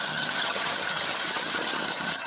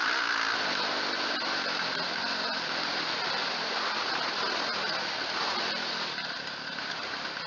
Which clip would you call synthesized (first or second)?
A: first